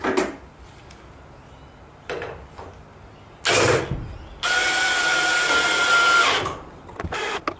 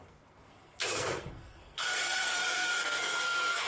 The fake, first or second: second